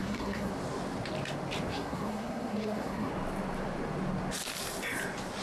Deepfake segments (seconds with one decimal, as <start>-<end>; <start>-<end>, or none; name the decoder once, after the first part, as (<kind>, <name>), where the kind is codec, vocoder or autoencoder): 0.0-0.5 (codec, SNAC); 1.7-3.1